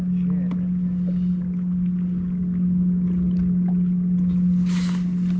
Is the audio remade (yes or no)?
no